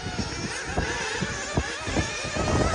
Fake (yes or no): no